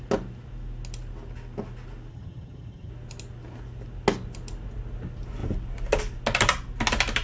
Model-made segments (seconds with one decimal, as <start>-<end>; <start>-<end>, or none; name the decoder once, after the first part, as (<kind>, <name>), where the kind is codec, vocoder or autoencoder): 2.1-2.9 (vocoder, HiFi-GAN)